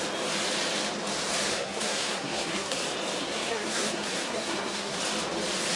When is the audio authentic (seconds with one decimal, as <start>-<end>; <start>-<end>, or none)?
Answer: 0.0-1.5; 2.8-3.2; 5.0-5.8

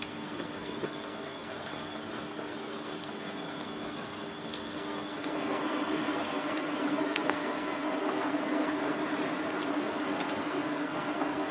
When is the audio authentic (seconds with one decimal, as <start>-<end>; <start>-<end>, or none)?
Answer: 9.0-9.7

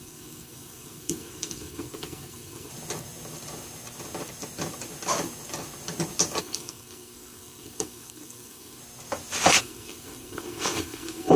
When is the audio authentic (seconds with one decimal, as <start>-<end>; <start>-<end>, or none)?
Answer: 2.7-6.4; 8.8-9.6

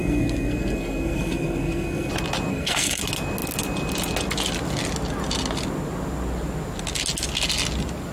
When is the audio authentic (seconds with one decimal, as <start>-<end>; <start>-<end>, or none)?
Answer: 2.1-2.5; 3.0-8.1

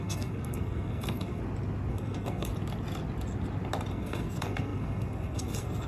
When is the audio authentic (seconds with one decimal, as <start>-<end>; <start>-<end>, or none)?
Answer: 1.4-1.9; 2.5-3.9